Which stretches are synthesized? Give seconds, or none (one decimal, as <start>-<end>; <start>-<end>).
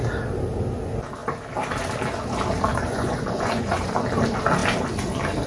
2.7-3.9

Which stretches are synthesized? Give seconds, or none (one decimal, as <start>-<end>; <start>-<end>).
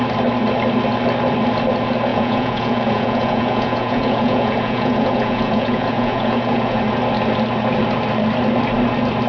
2.1-6.8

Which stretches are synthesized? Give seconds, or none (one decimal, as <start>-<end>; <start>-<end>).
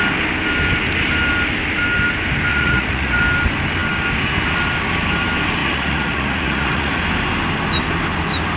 2.5-3.2; 5.6-7.0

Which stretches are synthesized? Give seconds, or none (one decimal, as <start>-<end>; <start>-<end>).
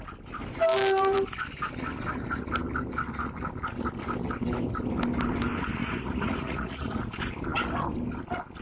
5.8-7.0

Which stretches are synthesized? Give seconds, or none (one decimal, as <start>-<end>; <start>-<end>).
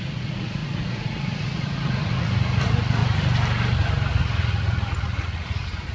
0.0-3.0; 4.2-5.9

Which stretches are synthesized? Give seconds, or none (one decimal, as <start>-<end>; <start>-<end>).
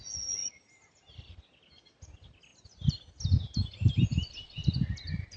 none